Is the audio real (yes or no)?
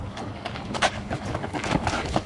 no